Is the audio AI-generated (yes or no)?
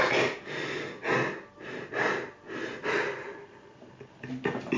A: no